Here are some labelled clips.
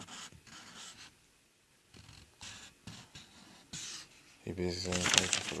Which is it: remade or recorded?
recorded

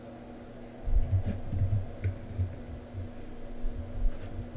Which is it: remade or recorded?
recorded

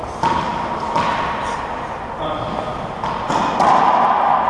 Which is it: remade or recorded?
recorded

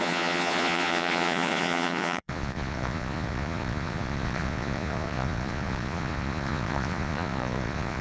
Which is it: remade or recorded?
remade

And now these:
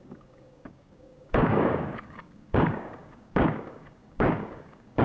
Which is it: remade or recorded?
remade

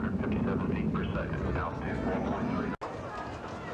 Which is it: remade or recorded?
recorded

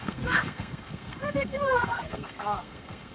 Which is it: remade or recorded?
remade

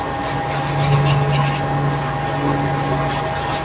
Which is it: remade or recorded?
recorded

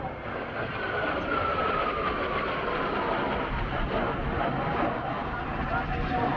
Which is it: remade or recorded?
recorded